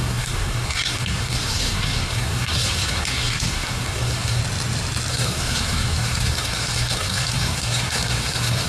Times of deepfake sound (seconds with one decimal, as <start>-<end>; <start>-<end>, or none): 0.0-4.4; 5.1-8.7